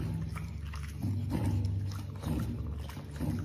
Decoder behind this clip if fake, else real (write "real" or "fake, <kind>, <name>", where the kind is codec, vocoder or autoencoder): real